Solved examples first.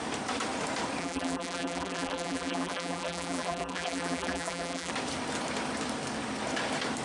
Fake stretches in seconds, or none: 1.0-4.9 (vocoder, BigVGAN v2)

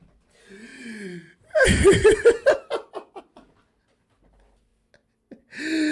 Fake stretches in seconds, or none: none